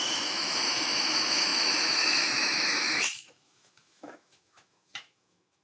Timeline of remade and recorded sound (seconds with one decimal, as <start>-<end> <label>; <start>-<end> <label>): 0.0-5.6 remade